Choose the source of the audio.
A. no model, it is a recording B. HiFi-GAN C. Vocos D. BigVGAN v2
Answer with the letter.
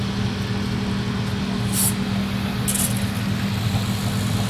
A